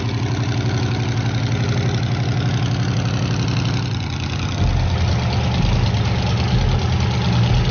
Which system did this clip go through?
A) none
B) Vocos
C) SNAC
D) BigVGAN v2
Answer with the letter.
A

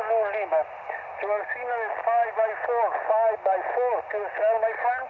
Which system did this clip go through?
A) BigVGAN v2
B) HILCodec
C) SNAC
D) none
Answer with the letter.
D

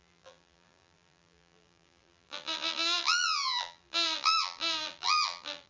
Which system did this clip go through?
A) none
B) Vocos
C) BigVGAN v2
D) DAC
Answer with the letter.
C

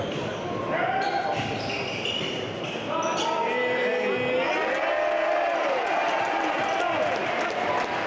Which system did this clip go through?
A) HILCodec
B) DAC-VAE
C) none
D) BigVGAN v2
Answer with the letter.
C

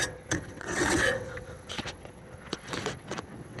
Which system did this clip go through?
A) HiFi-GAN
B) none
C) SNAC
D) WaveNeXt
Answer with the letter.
D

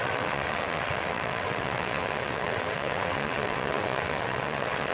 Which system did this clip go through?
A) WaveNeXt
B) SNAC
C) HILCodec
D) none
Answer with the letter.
A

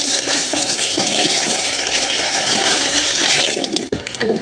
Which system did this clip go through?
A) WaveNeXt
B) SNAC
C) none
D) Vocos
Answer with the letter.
B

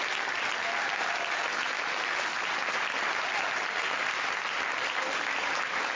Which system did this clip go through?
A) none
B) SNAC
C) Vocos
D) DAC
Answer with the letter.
A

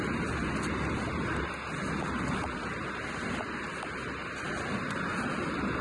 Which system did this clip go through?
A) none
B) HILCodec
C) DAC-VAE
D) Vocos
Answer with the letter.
A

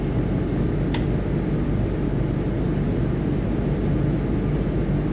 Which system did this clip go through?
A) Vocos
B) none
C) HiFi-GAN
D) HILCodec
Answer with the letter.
B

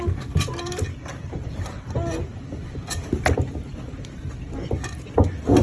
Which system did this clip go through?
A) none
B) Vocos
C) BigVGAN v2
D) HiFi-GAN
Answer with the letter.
A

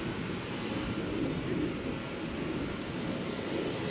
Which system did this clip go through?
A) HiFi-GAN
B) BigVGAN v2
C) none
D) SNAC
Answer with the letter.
C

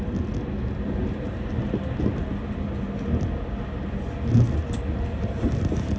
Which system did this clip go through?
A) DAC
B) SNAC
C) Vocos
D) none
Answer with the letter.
D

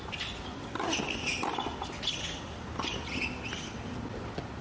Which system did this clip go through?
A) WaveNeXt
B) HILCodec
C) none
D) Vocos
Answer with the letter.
C